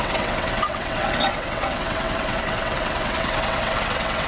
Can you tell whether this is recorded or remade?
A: remade